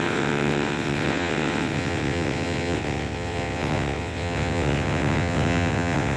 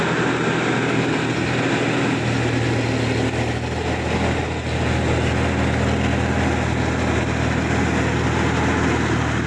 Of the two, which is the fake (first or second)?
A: first